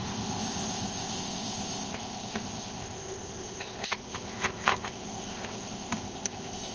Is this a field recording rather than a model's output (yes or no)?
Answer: no